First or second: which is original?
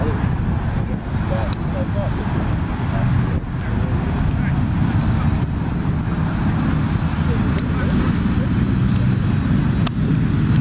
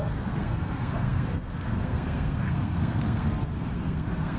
first